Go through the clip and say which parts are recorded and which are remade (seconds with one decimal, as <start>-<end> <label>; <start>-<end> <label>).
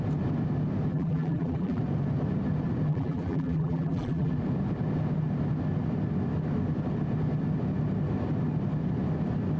0.0-0.9 recorded; 0.9-1.8 remade; 1.8-2.9 recorded; 2.9-4.3 remade; 4.3-9.6 recorded